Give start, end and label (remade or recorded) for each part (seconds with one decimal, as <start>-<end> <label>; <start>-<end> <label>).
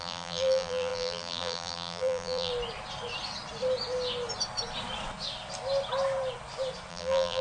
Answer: 0.0-2.5 remade; 2.5-6.9 recorded; 6.9-7.4 remade